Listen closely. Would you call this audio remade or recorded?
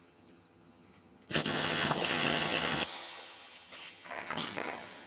remade